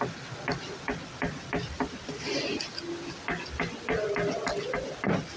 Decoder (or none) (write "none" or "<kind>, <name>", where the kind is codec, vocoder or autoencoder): none